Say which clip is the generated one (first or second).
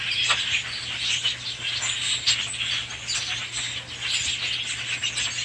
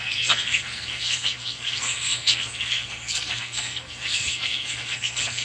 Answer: second